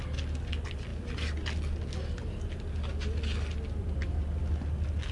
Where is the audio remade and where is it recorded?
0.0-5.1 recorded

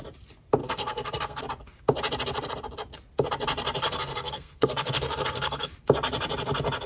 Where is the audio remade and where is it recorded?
0.0-0.6 recorded; 0.6-1.4 remade; 1.4-3.8 recorded; 3.8-5.7 remade; 5.7-6.9 recorded

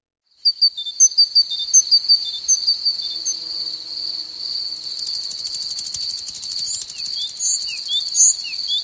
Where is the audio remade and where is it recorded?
0.0-8.8 recorded